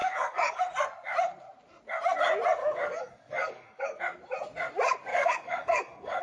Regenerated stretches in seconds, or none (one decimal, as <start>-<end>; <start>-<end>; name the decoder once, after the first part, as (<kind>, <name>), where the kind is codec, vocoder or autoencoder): 0.0-0.6 (codec, DAC); 2.6-4.0; 5.1-6.2